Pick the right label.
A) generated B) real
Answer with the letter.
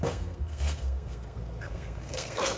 A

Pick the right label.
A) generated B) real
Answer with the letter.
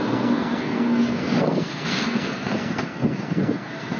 A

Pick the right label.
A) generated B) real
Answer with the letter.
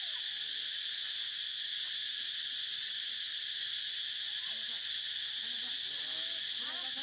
B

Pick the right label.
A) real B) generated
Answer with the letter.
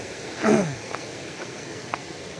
B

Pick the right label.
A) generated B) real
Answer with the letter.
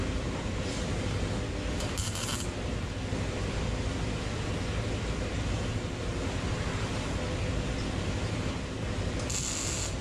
B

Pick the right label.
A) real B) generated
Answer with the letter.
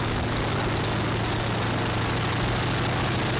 A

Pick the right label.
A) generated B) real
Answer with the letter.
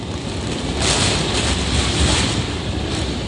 B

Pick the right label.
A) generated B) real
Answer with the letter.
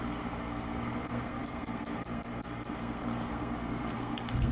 A